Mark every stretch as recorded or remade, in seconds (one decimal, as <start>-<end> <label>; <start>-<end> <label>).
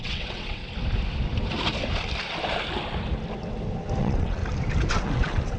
0.0-0.6 remade; 0.6-4.0 recorded; 4.0-4.4 remade; 4.4-4.9 recorded; 4.9-5.6 remade